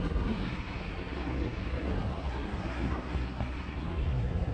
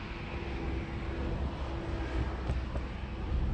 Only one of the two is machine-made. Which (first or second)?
first